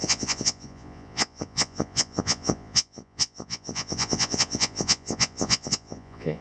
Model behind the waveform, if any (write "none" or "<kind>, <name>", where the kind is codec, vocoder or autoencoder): vocoder, Vocos